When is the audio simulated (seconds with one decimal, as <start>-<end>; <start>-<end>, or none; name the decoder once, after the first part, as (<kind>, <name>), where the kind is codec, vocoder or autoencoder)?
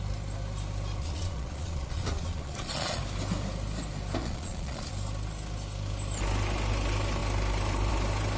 1.0-3.0 (vocoder, Vocos); 4.2-4.9